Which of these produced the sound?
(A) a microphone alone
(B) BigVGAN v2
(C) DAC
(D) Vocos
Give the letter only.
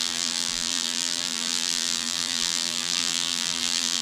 B